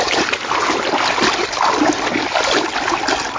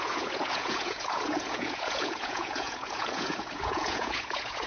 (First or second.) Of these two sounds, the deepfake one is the second